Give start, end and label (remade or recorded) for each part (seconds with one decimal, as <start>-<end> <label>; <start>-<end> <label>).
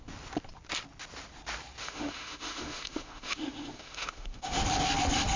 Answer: 0.0-1.8 recorded; 1.8-4.6 remade; 4.6-5.4 recorded